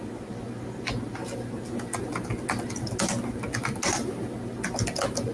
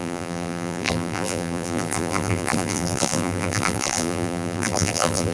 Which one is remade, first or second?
second